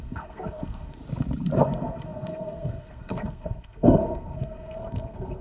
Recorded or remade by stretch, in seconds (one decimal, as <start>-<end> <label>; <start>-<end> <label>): 0.0-1.0 remade; 1.0-1.6 recorded; 1.6-5.4 remade